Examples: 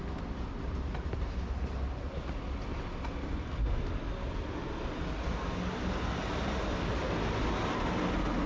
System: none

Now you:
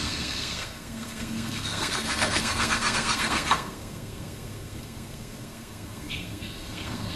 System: codec, SNAC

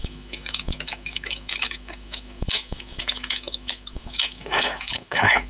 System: autoencoder, DAC-VAE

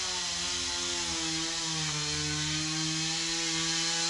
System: none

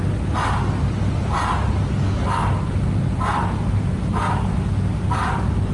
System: none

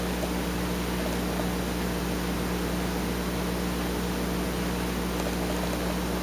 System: none